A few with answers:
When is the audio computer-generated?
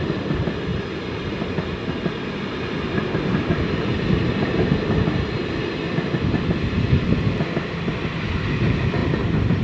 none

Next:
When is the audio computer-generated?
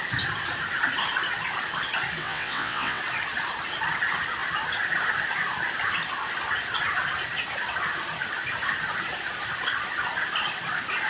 2.2-3.0 (vocoder, WaveNeXt)